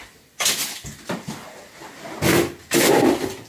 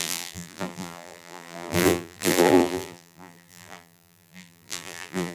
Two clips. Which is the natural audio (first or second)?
first